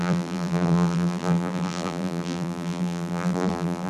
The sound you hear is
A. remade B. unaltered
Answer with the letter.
A